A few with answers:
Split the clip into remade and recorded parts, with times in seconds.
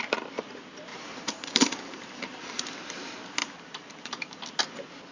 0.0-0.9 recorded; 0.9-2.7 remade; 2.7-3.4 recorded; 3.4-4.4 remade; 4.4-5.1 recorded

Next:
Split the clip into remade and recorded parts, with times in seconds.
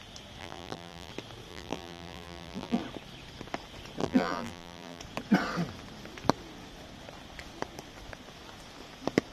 0.0-0.4 recorded; 0.4-1.1 remade; 1.1-1.5 recorded; 1.5-2.8 remade; 2.8-4.0 recorded; 4.0-5.0 remade; 5.0-9.3 recorded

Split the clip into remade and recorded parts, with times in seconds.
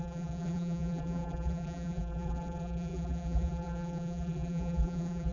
0.0-5.3 remade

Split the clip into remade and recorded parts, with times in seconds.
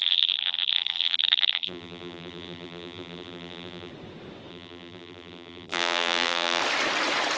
0.0-3.9 remade; 3.9-4.5 recorded; 4.5-6.6 remade; 6.6-7.4 recorded